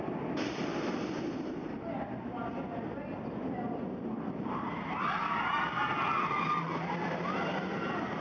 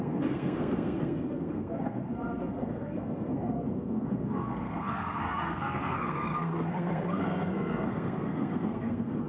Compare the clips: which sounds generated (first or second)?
second